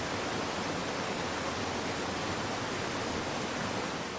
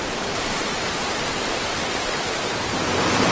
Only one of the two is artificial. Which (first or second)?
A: second